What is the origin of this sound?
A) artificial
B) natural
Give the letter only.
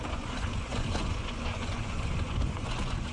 A